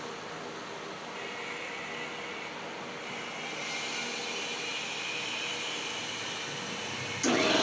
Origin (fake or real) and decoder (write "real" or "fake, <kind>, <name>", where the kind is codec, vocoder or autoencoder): real